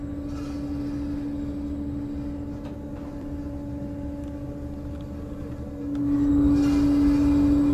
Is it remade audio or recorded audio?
recorded